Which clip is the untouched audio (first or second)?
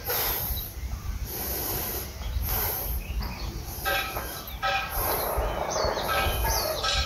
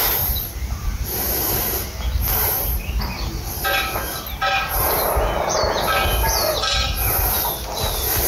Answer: second